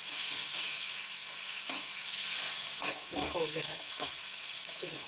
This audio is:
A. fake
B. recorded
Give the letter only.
A